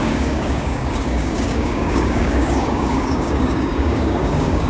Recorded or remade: remade